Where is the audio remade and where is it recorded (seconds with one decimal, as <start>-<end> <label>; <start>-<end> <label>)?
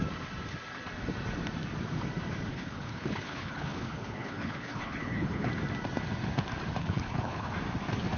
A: 0.0-2.5 recorded; 2.5-5.5 remade; 5.5-6.8 recorded; 6.8-7.5 remade; 7.5-8.2 recorded